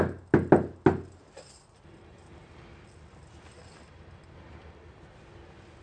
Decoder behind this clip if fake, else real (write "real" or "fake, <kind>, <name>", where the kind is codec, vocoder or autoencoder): real